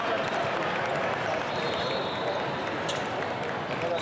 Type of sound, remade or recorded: recorded